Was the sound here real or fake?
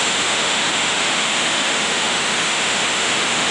fake